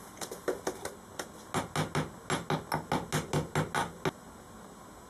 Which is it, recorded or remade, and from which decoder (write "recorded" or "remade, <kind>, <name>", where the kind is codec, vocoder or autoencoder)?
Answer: recorded